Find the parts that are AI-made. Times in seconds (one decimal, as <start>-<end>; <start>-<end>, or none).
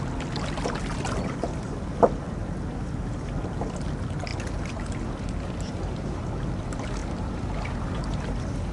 7.0-7.7